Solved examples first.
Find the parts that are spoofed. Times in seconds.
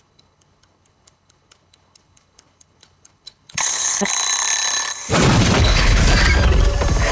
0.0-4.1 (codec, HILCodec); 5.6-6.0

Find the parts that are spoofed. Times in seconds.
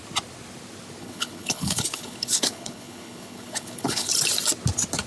1.0-4.1 (codec, HILCodec)